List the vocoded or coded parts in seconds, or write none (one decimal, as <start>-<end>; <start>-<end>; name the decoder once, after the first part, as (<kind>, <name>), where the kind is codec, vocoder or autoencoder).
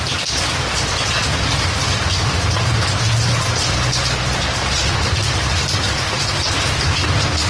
0.0-1.2 (vocoder, BigVGAN v2); 2.0-5.6; 6.8-7.5